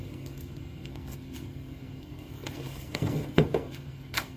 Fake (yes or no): yes